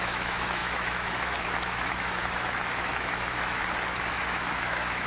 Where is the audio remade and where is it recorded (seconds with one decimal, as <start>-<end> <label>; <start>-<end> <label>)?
0.0-3.6 remade; 3.6-4.1 recorded; 4.1-5.1 remade